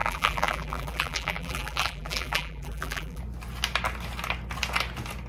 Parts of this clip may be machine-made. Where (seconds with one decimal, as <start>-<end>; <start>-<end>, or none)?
0.0-3.2